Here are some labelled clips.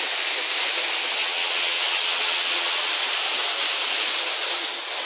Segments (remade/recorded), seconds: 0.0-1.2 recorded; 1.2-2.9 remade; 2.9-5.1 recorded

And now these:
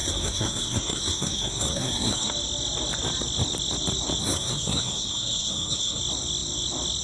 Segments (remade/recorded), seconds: 0.0-2.3 remade; 2.3-4.2 recorded; 4.2-6.0 remade; 6.0-7.0 recorded

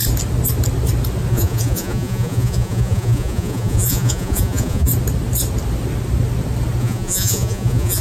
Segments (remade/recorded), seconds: 0.0-1.3 recorded; 1.3-4.9 remade; 4.9-6.8 recorded; 6.8-8.0 remade

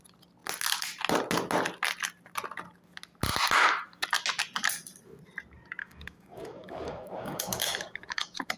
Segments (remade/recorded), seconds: 0.0-5.8 recorded; 5.8-8.6 remade

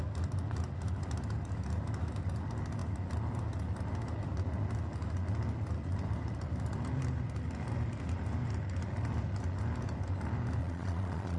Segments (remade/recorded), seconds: 0.0-10.6 recorded; 10.6-11.4 remade

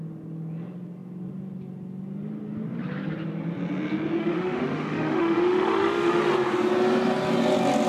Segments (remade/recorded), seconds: 0.0-4.2 recorded; 4.2-6.2 remade; 6.2-7.9 recorded

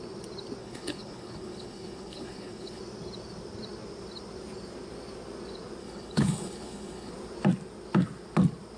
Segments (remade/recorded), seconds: 0.0-0.6 recorded; 0.6-2.8 remade; 2.8-5.8 recorded; 5.8-7.1 remade; 7.1-8.8 recorded